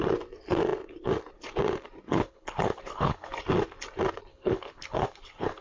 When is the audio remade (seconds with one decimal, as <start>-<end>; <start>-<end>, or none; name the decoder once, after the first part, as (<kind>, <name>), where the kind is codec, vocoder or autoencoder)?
2.1-3.3 (codec, HILCodec); 4.3-5.6